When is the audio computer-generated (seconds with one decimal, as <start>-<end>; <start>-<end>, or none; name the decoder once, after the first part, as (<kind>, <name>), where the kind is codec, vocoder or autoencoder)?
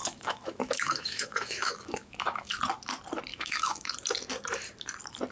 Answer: 0.0-2.6 (autoencoder, DAC-VAE); 3.3-3.9